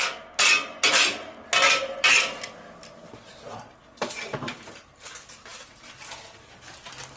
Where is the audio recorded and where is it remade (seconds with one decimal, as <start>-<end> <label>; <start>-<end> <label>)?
0.0-7.2 recorded